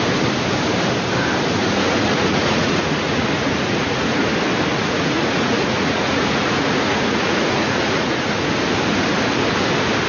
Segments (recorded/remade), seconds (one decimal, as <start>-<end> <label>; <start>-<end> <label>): 0.0-1.6 recorded; 1.6-4.2 remade; 4.2-4.7 recorded; 4.7-8.5 remade; 8.5-10.1 recorded